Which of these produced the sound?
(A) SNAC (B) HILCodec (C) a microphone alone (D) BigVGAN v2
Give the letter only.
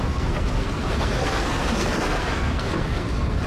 A